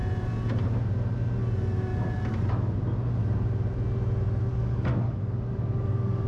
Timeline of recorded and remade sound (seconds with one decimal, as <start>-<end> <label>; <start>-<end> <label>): 0.0-4.5 recorded; 4.5-6.3 remade